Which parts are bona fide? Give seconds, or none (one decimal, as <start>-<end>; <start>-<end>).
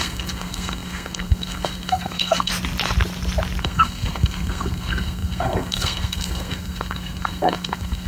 2.5-3.6